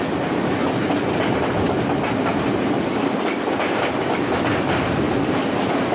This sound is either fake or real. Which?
real